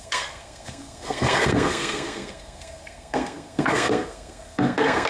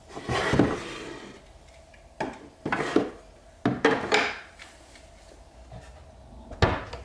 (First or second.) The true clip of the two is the second